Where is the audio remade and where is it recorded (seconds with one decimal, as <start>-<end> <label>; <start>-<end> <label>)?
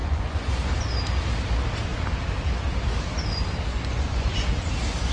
0.0-0.5 remade; 0.5-3.7 recorded; 3.7-4.5 remade; 4.5-5.1 recorded